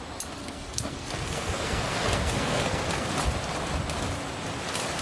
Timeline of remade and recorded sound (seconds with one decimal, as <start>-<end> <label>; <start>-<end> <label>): 0.0-0.4 recorded; 0.4-3.1 remade; 3.1-5.0 recorded